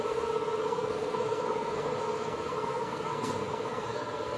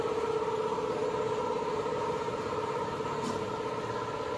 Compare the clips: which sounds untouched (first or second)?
second